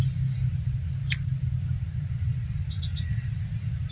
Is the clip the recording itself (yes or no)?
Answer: yes